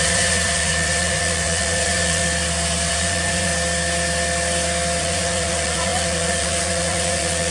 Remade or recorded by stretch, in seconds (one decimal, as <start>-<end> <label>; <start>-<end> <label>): 0.0-2.2 remade; 2.2-2.9 recorded; 2.9-3.5 remade; 3.5-5.0 recorded; 5.0-7.5 remade